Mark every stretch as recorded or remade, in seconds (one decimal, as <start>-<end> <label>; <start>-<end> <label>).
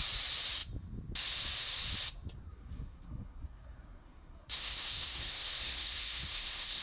0.0-2.4 recorded; 2.4-6.8 remade